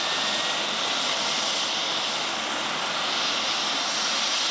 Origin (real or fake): real